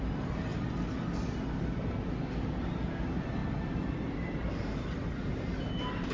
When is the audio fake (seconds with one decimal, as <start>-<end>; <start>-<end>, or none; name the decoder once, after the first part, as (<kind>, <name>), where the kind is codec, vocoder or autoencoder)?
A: 3.4-4.5 (vocoder, BigVGAN v2)